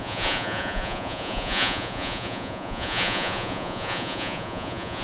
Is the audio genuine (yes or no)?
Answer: no